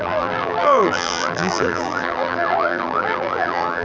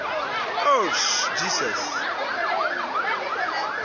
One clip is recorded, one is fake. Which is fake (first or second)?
first